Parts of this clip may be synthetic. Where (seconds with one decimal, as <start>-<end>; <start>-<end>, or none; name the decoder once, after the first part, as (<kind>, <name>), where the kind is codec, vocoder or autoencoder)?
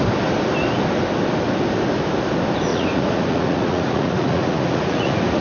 2.7-5.4 (vocoder, Vocos)